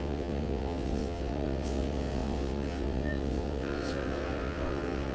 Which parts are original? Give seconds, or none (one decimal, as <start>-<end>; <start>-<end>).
none